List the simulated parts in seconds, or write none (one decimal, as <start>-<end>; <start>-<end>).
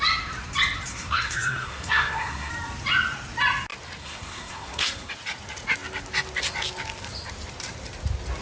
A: 0.9-2.5; 4.0-5.1